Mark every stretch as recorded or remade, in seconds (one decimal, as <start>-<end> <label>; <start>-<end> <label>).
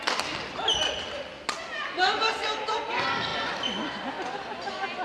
0.0-5.0 recorded